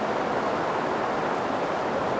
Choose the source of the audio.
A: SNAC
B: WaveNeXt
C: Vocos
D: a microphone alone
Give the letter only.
D